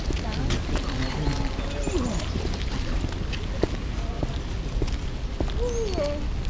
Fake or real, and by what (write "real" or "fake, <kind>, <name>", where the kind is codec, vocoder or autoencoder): real